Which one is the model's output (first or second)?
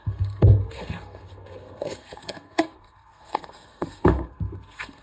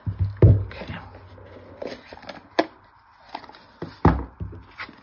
first